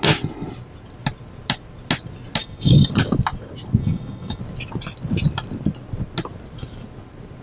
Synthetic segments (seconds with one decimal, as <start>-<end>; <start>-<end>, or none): 2.4-2.9; 3.8-4.4